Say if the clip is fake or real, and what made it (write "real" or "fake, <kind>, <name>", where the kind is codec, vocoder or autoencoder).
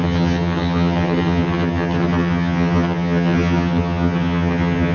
fake, vocoder, HiFi-GAN